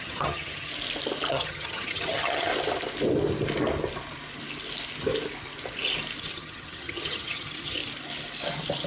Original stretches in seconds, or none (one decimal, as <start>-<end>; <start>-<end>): 0.7-1.3; 2.5-6.2; 7.8-8.9